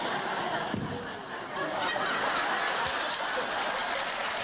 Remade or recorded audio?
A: recorded